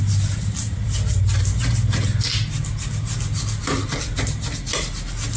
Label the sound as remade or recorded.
recorded